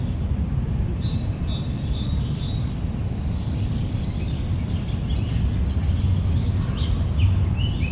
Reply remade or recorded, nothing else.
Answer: recorded